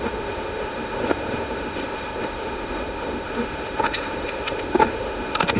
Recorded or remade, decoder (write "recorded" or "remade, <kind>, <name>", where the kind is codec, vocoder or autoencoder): remade, autoencoder, DAC-VAE